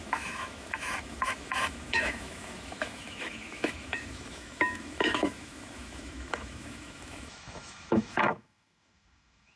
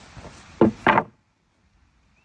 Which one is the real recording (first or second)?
second